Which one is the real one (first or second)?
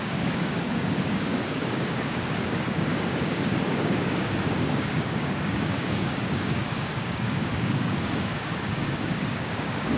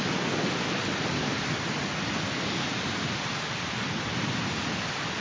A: second